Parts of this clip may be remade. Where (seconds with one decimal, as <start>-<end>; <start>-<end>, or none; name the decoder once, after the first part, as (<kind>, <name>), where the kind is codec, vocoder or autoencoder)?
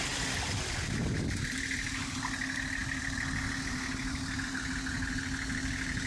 none